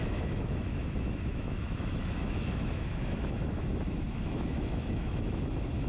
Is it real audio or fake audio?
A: fake